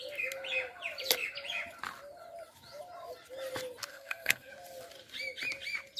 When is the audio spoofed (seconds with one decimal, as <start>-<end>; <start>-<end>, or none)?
3.9-4.5